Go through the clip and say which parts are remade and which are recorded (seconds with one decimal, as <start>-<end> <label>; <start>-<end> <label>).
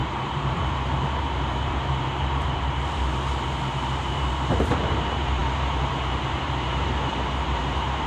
0.0-8.1 remade